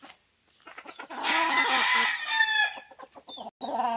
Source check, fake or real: real